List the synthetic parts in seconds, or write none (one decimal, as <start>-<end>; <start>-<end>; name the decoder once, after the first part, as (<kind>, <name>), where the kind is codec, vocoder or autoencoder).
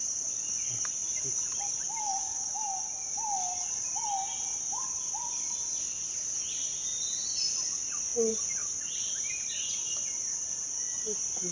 none